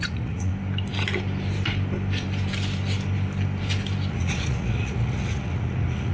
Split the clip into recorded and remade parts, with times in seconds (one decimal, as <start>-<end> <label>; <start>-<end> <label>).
0.0-0.5 remade; 0.5-4.1 recorded; 4.1-6.1 remade